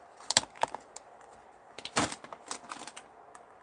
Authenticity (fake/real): real